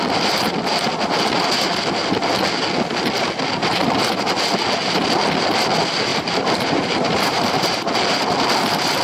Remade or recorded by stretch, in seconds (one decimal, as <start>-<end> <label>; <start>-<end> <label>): 0.0-6.1 recorded; 6.1-7.9 remade; 7.9-9.0 recorded